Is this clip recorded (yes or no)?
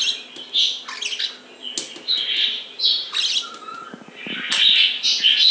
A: yes